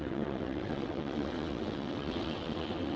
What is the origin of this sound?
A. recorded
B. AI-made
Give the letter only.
B